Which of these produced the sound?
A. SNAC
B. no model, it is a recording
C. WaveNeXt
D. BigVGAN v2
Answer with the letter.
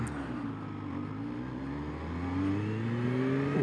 B